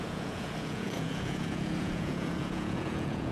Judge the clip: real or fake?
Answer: fake